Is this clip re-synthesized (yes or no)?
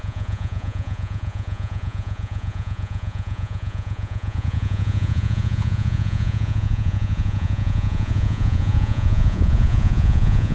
yes